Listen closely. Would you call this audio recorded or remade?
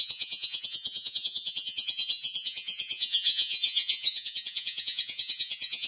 remade